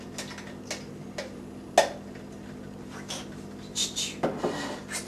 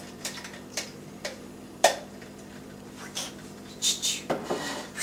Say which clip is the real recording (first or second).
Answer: first